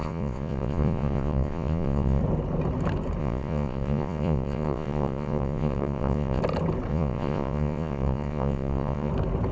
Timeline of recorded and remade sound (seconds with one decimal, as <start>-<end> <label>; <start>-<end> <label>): 0.0-2.2 remade; 2.2-3.2 recorded; 3.2-6.4 remade; 6.4-6.9 recorded; 6.9-9.1 remade; 9.1-9.5 recorded